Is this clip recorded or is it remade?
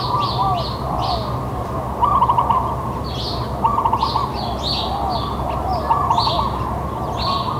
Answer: recorded